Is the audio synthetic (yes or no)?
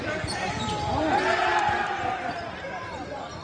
yes